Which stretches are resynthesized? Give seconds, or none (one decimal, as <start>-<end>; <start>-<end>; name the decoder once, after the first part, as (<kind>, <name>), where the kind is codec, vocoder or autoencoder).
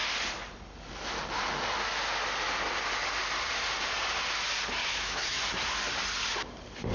4.8-5.4 (autoencoder, DAC-VAE)